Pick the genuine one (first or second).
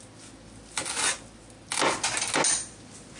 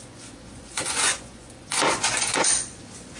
first